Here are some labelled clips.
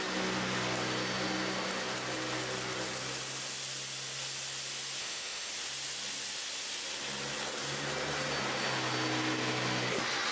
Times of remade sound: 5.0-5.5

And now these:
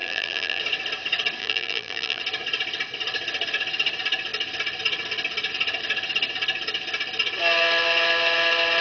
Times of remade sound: 0.0-0.6; 1.4-2.2

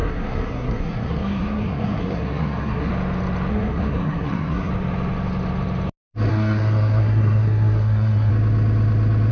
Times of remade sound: 0.0-2.9; 3.5-4.7; 6.3-8.3